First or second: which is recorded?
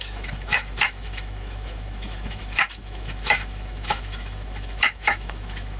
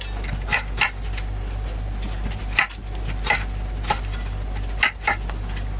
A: second